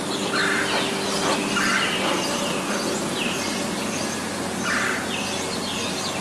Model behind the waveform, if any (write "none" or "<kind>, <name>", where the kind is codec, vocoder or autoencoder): none